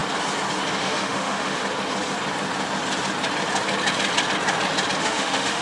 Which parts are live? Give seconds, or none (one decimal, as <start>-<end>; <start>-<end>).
0.0-0.8; 1.6-5.0